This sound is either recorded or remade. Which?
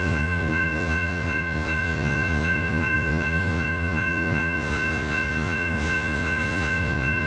remade